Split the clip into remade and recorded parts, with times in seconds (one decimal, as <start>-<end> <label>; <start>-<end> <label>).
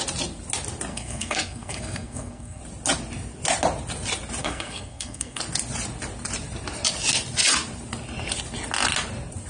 0.0-0.9 recorded; 0.9-2.6 remade; 2.6-4.4 recorded; 4.4-5.4 remade; 5.4-9.5 recorded